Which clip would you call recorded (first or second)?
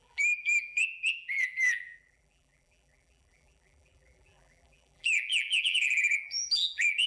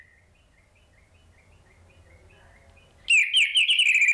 second